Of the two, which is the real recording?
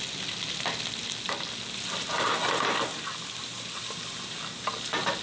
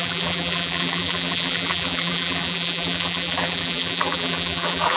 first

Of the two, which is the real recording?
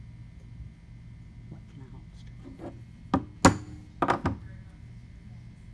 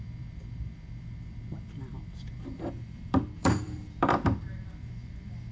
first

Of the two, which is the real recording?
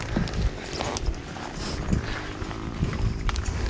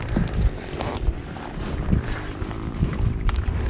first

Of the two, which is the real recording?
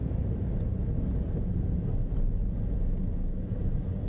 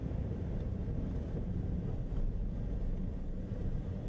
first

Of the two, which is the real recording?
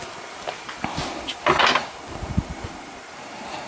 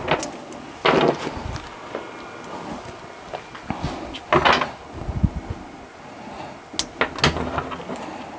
second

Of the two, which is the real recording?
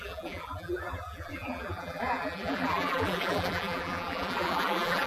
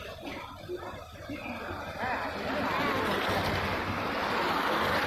second